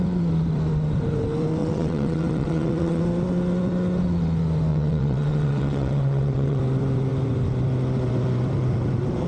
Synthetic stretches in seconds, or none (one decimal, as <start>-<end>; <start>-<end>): 1.6-3.0; 4.7-6.6